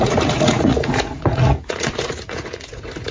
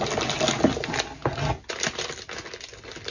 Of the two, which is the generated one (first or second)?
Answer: first